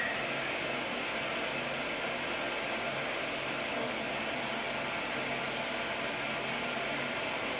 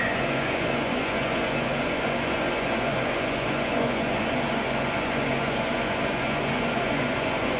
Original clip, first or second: first